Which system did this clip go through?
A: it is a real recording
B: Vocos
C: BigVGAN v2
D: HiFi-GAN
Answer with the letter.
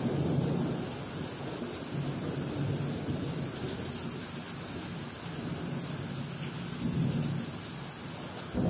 A